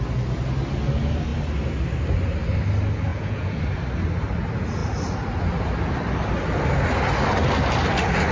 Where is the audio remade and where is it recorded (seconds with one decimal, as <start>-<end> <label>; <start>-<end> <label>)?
0.0-3.1 recorded; 3.1-3.6 remade; 3.6-8.3 recorded